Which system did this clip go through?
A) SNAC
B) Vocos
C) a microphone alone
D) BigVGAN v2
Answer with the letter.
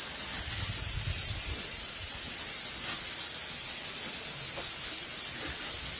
C